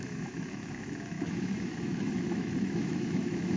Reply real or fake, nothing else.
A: fake